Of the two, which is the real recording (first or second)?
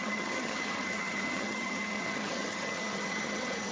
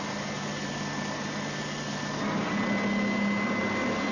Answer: second